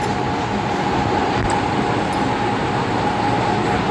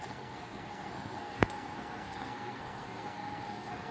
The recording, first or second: first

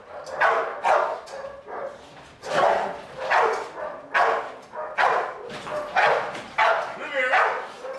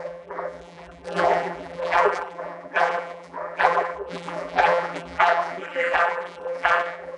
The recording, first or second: first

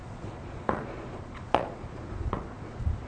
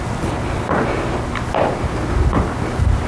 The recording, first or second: second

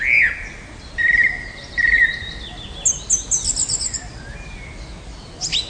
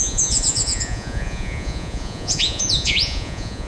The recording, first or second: first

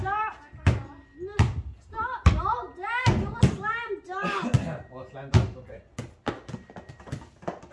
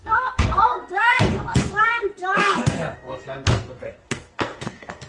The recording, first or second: first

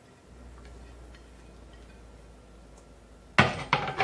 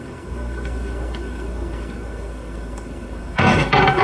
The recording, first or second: first